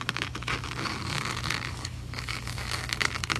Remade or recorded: remade